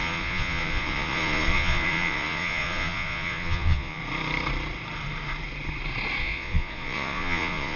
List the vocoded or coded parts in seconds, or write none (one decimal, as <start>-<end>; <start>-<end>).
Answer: 0.0-4.0; 6.2-7.8